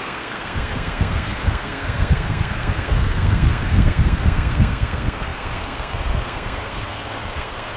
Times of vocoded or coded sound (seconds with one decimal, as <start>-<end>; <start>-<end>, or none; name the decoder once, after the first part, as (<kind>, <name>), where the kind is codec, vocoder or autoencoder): 0.0-7.8 (codec, SNAC)